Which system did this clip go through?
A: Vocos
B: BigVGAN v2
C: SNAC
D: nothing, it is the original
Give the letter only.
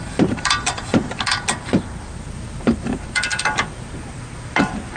B